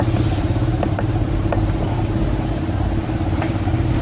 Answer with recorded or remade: recorded